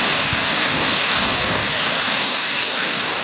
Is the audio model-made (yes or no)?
yes